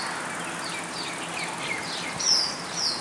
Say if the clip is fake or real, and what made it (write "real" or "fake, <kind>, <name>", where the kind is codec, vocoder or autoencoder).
real